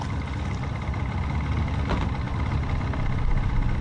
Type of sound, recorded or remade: recorded